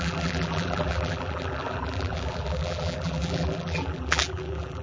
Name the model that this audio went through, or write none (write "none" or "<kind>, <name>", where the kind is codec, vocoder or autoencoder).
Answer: vocoder, BigVGAN v2